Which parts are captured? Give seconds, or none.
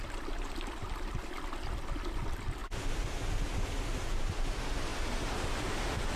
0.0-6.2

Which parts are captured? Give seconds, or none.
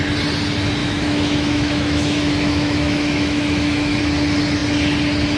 0.0-0.8; 4.0-5.4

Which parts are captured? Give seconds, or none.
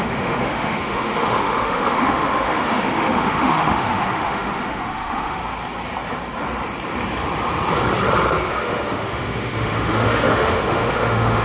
5.4-8.5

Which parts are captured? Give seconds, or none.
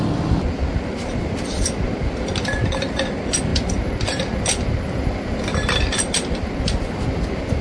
0.0-7.6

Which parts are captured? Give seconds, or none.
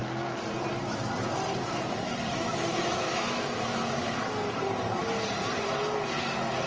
0.0-2.3; 4.3-6.7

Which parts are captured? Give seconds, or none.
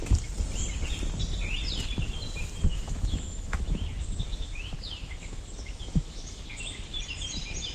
0.0-2.7; 6.4-7.7